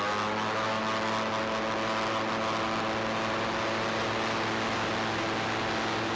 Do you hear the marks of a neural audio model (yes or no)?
no